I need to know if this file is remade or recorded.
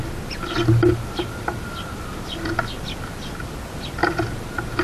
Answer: recorded